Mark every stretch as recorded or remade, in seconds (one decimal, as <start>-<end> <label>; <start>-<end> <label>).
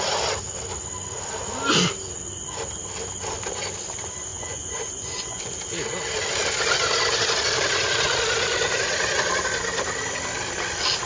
0.0-4.3 recorded; 4.3-5.5 remade; 5.5-11.1 recorded